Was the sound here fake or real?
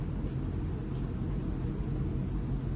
real